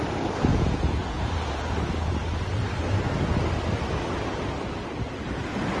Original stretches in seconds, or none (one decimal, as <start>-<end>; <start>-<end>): 0.0-0.5; 1.3-5.8